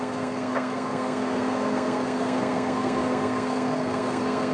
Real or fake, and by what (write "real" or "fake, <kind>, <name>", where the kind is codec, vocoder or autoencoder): fake, codec, SNAC